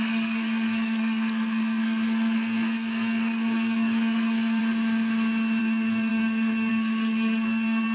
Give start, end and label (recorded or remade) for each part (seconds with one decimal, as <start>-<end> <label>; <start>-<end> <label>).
0.0-4.6 remade; 4.6-5.6 recorded; 5.6-7.9 remade